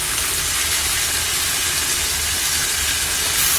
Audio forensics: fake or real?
real